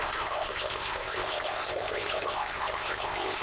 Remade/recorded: remade